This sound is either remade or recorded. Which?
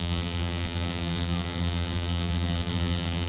remade